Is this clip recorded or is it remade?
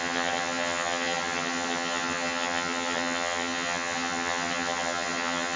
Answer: remade